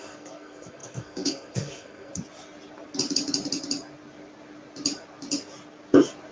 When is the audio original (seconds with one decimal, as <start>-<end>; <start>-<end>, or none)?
2.1-6.3